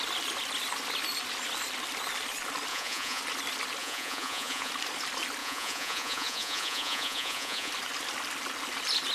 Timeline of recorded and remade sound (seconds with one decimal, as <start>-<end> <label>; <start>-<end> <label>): 0.0-2.7 recorded; 2.7-3.2 remade; 3.2-3.8 recorded; 3.8-4.7 remade; 4.7-5.4 recorded; 5.4-7.7 remade; 7.7-9.1 recorded